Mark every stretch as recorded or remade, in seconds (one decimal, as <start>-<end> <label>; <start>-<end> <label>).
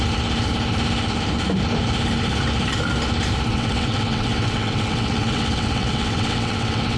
0.0-3.5 recorded; 3.5-7.0 remade